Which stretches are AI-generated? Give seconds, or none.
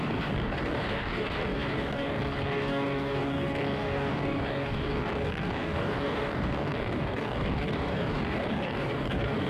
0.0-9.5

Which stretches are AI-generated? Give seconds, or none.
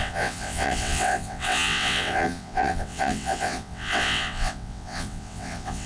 0.0-5.9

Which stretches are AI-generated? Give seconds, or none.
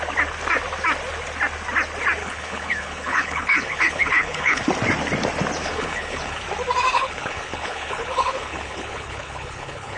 2.2-4.6; 5.6-6.4; 6.9-10.0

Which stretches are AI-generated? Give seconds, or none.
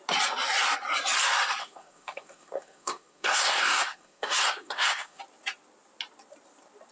1.6-5.2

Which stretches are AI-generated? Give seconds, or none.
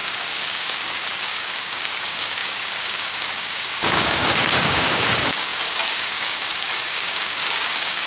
0.0-8.1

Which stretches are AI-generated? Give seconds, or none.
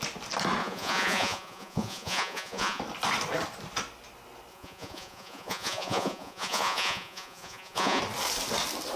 0.6-2.8; 4.5-8.0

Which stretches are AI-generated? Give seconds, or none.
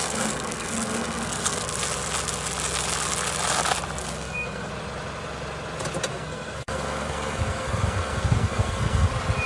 0.0-1.6; 4.0-4.7; 6.1-9.1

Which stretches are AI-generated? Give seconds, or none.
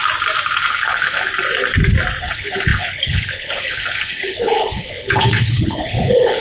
0.7-1.3; 2.2-6.4